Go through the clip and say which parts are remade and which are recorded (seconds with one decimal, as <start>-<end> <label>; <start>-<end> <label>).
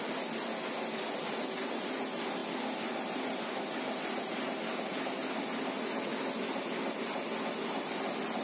0.0-8.4 recorded